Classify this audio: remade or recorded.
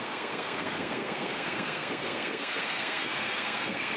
remade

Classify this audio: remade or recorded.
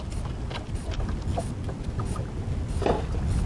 recorded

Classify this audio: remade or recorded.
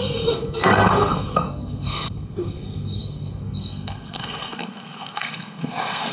remade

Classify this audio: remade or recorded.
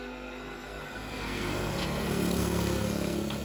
remade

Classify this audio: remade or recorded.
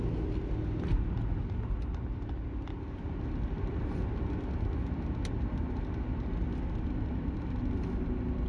recorded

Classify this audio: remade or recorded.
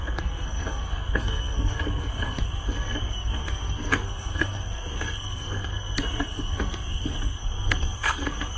remade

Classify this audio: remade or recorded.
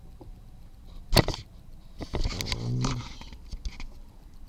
recorded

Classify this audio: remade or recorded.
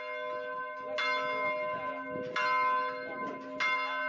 recorded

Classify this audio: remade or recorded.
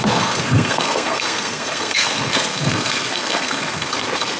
remade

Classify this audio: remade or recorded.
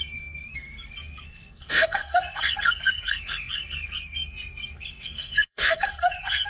remade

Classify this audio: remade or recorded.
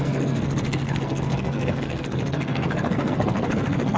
remade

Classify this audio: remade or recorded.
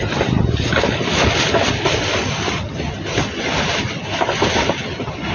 recorded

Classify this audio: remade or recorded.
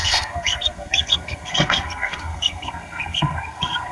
remade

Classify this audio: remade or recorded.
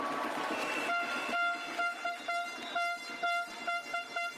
recorded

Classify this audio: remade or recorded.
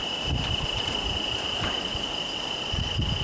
recorded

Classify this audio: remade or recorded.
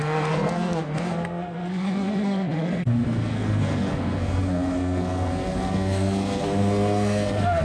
remade